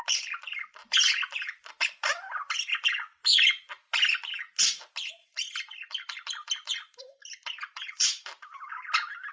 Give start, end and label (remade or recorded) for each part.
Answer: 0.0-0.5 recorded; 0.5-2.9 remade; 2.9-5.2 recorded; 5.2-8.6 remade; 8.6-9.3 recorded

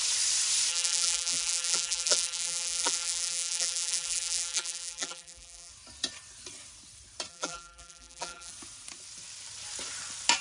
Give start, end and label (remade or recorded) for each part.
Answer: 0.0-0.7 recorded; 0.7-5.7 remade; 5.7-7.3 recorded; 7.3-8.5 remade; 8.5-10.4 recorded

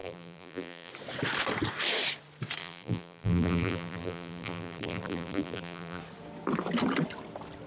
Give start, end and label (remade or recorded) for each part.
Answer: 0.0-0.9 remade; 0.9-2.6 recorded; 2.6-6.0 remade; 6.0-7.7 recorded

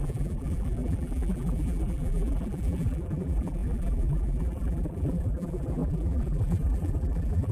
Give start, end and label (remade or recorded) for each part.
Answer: 0.0-7.5 remade

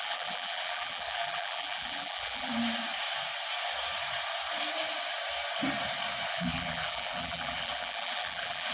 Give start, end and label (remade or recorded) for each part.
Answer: 0.0-2.5 remade; 2.5-6.3 recorded; 6.3-8.7 remade

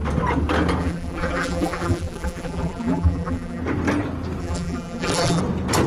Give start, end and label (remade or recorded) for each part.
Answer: 0.0-0.8 recorded; 0.8-3.6 remade; 3.6-4.4 recorded; 4.4-5.4 remade; 5.4-5.9 recorded

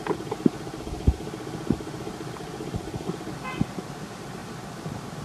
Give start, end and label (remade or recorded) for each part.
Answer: 0.0-4.4 recorded; 4.4-5.2 remade

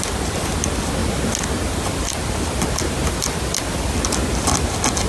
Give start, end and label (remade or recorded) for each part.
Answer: 0.0-5.1 recorded